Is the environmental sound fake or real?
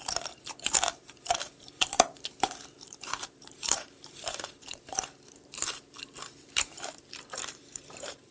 fake